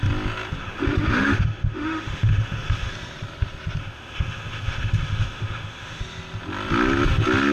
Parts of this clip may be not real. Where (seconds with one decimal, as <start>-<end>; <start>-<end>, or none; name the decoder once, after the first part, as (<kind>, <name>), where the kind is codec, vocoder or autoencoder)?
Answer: 0.6-2.9 (autoencoder, DAC-VAE); 3.8-6.0